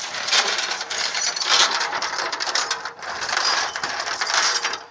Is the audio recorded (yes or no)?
no